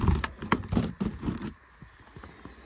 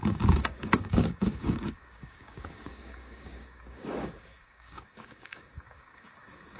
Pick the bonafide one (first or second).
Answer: first